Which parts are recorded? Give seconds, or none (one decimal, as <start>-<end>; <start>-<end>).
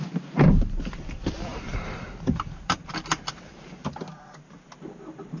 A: 0.0-1.5; 4.7-5.4